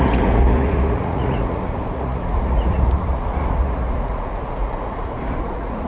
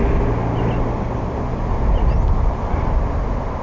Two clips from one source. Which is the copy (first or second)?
first